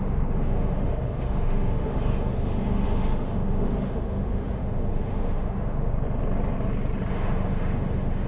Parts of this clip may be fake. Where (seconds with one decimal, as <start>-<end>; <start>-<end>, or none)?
0.0-5.9; 7.1-8.3